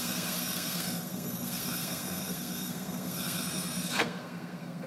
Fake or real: fake